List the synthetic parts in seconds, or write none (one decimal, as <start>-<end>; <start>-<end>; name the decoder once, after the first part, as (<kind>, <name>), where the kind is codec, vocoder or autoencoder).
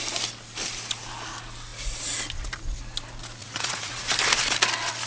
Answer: 3.4-4.1 (vocoder, Vocos)